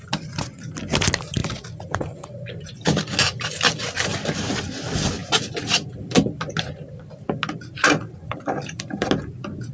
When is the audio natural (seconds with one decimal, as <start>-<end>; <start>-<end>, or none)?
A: 0.0-1.4; 2.7-4.1; 4.6-7.8; 9.1-9.7

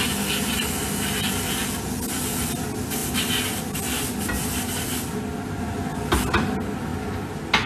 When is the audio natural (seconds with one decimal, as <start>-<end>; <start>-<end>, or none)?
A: 0.0-3.0; 4.4-7.7

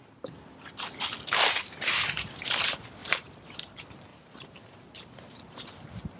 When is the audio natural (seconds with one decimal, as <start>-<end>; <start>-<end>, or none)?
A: 0.0-3.0; 3.6-4.1; 5.4-6.2

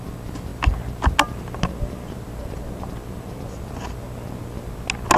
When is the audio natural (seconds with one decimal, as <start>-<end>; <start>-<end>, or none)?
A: 0.0-5.2

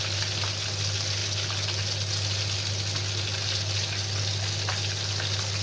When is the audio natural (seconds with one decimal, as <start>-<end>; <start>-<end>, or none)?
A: 0.0-5.6

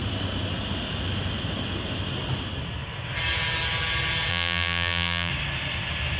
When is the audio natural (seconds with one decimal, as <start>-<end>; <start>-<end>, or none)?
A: 0.0-4.3; 5.3-6.2

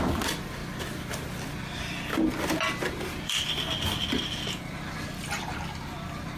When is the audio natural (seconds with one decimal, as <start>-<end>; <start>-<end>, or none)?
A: 0.6-3.0

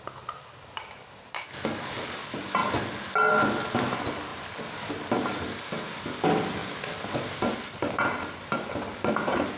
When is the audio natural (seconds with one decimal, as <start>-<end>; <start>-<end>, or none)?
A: 0.0-4.3; 4.9-6.6; 7.1-9.6